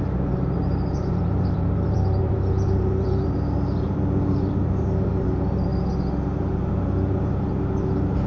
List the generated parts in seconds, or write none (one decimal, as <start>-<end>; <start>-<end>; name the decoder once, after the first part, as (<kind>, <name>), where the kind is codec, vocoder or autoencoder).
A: 0.0-5.7 (vocoder, BigVGAN v2); 6.8-8.3